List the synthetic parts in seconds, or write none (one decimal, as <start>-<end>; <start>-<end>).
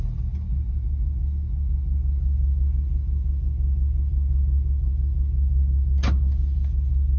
none